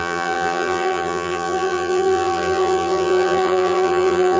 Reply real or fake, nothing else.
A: fake